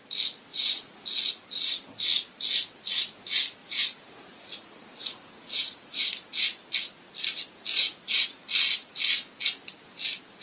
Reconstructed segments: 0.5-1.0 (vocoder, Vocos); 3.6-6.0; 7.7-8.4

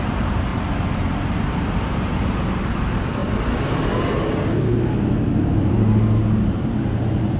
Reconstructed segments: 0.0-0.5 (vocoder, BigVGAN v2); 1.3-3.2; 5.5-7.4

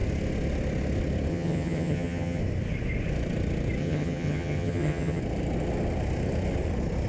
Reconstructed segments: 1.3-2.4 (vocoder, HiFi-GAN); 3.8-5.2

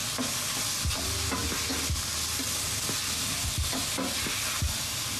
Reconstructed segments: 0.0-1.7 (vocoder, BigVGAN v2)

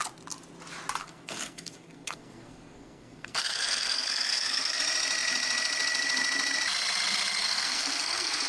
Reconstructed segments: 1.0-4.8 (codec, SNAC); 7.4-8.5